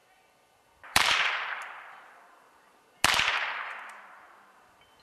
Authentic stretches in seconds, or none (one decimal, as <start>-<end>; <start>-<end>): 3.0-5.0